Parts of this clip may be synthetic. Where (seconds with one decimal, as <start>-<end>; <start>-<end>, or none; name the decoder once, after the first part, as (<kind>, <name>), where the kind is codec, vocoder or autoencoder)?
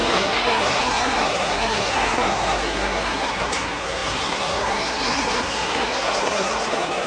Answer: 0.0-7.1 (codec, SNAC)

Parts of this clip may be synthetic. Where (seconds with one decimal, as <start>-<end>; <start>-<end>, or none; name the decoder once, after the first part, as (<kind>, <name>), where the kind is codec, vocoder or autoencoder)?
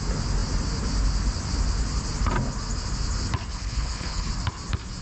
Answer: 3.5-4.3 (codec, HILCodec)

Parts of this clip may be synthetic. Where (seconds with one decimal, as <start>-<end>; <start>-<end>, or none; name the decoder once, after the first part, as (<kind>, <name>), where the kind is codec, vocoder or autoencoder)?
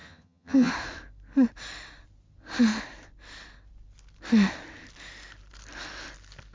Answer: 0.0-0.7 (vocoder, HiFi-GAN)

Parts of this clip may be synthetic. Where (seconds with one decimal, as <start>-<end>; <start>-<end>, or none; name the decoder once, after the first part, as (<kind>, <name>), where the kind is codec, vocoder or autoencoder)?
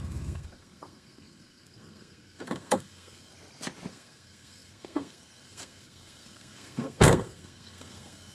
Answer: 0.0-3.3 (codec, SNAC); 3.9-8.3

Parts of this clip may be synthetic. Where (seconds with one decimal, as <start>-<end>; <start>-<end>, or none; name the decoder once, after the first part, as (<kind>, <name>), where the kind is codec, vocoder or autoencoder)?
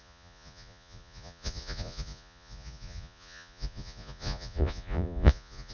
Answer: 0.0-5.7 (vocoder, Vocos)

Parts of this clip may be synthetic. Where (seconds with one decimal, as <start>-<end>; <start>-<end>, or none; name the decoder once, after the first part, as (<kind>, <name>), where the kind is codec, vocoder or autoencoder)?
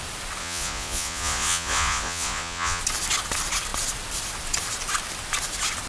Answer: 0.4-2.8 (vocoder, Vocos)